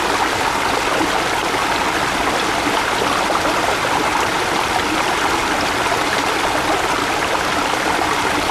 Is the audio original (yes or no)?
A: yes